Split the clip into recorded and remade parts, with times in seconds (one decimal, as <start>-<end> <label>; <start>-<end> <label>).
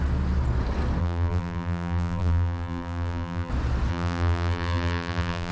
0.0-1.0 recorded; 1.0-3.5 remade; 3.5-3.9 recorded; 3.9-5.5 remade